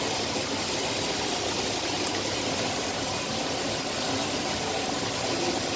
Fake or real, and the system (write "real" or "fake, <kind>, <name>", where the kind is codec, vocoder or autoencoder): real